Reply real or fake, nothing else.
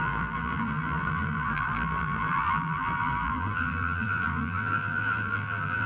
fake